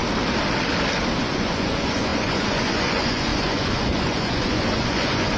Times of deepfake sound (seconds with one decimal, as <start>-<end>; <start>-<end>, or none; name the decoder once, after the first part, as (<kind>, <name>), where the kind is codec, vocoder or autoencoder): 1.2-5.4 (vocoder, Vocos)